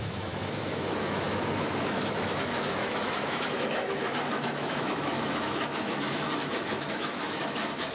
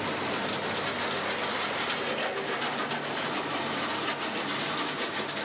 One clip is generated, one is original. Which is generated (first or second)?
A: first